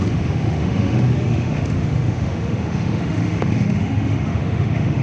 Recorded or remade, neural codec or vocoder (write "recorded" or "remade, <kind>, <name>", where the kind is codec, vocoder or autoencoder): remade, autoencoder, DAC-VAE